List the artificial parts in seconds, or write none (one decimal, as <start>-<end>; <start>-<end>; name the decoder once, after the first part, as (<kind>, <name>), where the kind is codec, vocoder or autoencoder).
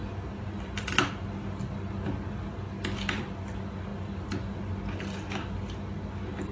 none